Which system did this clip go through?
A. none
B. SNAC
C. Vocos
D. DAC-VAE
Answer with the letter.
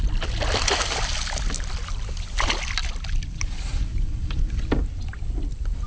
A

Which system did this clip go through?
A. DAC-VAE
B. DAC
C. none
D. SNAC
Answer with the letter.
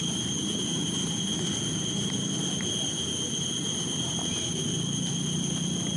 C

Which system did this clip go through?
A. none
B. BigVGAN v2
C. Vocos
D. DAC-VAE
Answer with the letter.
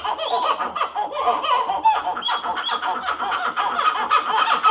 A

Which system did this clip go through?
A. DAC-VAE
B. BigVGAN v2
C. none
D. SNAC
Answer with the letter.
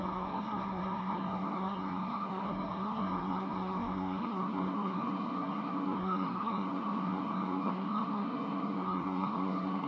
D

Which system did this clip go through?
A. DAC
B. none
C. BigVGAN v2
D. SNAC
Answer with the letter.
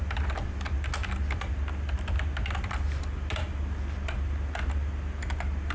B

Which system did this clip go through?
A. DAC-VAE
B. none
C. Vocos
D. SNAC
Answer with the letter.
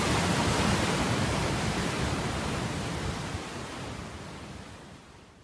B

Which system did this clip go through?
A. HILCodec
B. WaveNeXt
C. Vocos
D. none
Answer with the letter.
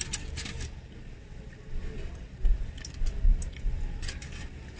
D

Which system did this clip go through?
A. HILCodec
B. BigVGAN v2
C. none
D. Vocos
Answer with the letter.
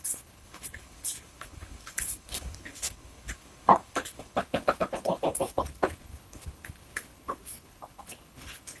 A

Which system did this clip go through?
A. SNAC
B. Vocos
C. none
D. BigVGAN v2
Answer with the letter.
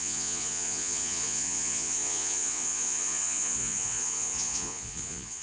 B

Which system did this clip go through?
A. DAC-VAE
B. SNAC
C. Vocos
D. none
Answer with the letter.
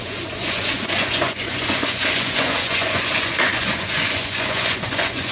C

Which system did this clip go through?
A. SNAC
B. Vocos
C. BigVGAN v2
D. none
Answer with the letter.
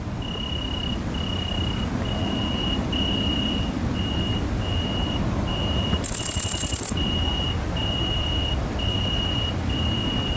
C